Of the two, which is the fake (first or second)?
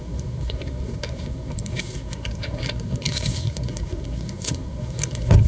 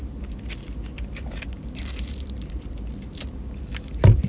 first